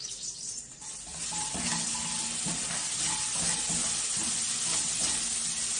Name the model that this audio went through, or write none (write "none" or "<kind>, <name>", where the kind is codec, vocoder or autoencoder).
none